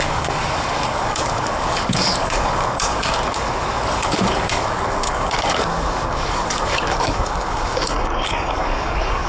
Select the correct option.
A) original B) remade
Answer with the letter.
B